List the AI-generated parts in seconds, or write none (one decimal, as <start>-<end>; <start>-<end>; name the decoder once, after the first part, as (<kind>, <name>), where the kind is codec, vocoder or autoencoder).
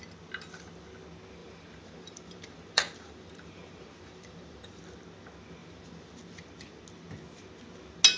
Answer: 1.4-4.8 (vocoder, BigVGAN v2); 5.6-6.2